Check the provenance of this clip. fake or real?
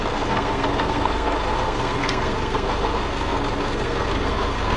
fake